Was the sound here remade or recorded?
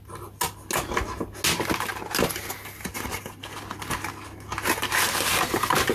recorded